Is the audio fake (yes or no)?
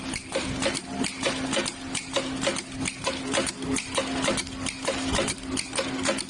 no